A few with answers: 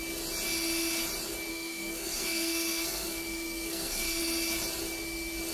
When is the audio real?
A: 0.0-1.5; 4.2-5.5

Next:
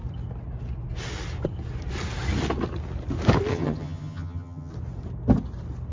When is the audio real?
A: 0.0-3.5; 4.7-5.9

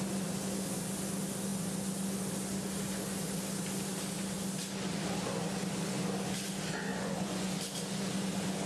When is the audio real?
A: 0.0-6.9; 7.5-8.7

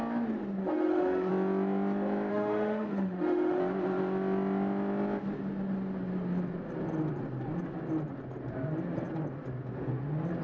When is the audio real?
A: 0.0-0.6; 1.3-2.3; 3.6-10.4

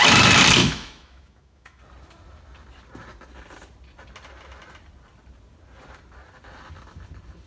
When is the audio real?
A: 0.0-0.6; 1.8-7.5

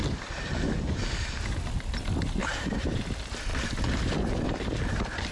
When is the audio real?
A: 0.0-2.4; 3.0-3.5; 4.3-5.3

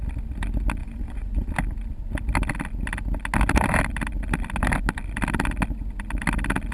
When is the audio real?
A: 0.0-0.8; 1.5-6.7